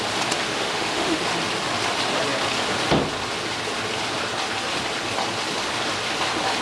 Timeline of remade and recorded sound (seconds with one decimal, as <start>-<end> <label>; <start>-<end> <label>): 0.0-0.5 recorded; 0.5-1.2 remade; 1.2-6.6 recorded

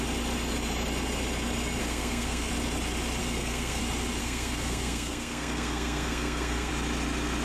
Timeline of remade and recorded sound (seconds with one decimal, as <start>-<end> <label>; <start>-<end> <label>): 0.0-1.8 recorded; 1.8-2.5 remade; 2.5-3.2 recorded; 3.2-3.8 remade; 3.8-4.2 recorded; 4.2-6.7 remade; 6.7-7.4 recorded

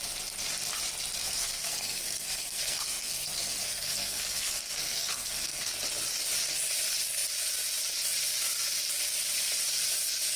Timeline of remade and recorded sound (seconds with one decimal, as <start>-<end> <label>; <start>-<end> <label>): 0.0-1.2 recorded; 1.2-5.7 remade; 5.7-10.4 recorded

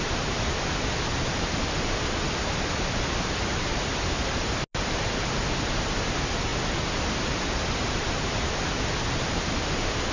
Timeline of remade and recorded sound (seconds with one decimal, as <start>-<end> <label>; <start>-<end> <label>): 0.0-10.1 recorded